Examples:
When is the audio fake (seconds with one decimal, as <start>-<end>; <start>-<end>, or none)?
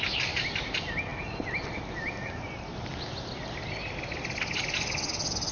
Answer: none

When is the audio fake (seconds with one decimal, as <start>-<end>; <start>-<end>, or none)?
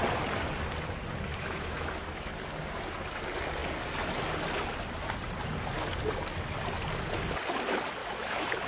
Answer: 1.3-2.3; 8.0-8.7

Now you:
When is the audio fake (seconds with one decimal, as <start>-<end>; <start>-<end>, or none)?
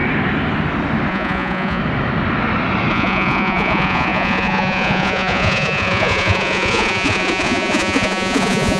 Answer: 1.1-1.8; 2.9-8.8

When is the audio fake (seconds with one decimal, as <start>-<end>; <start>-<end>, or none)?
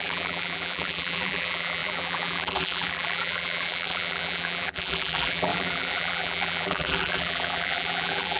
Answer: 0.0-8.4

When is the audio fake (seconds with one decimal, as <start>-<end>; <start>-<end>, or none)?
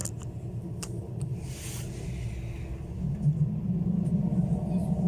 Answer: 0.7-1.3; 4.4-5.1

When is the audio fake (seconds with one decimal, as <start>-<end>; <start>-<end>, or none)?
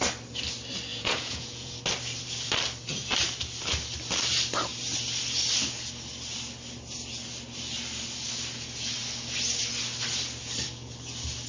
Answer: 0.9-1.7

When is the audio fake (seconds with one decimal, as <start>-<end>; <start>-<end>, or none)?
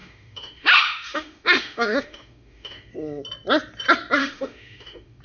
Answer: 0.0-2.9; 4.2-5.2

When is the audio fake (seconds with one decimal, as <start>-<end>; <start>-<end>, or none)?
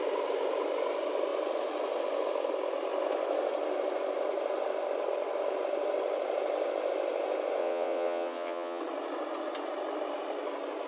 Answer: 7.6-8.8